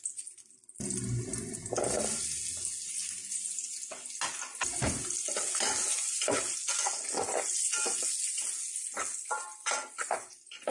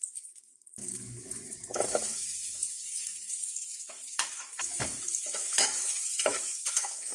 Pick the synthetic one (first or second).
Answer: second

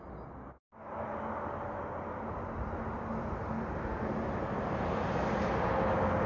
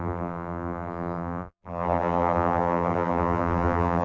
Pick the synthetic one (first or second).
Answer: second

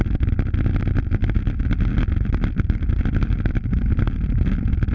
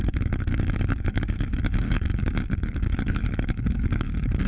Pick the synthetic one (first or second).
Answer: second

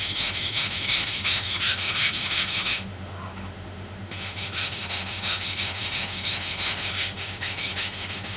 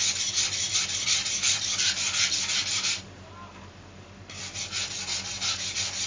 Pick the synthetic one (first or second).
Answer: first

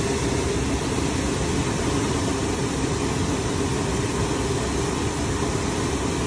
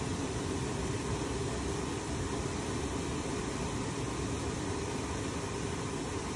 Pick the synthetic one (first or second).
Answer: second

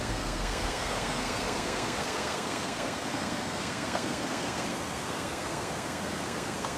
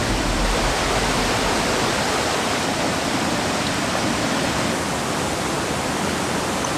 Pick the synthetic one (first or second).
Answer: first